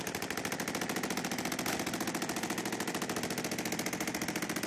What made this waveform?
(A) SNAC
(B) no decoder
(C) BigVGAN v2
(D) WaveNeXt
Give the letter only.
B